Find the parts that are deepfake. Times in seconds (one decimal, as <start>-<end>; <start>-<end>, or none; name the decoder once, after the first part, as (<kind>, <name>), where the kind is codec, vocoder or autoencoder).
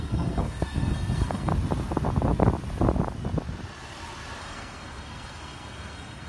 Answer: 0.0-1.5 (codec, SNAC); 4.4-6.3